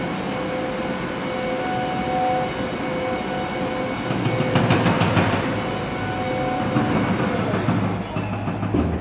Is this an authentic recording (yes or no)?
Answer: yes